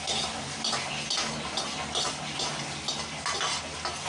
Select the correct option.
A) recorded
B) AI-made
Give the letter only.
A